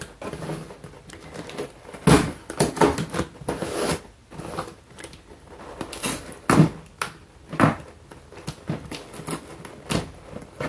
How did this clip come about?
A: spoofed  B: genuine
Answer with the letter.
B